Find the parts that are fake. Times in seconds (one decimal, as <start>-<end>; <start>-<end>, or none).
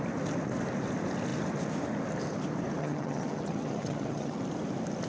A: 2.8-4.4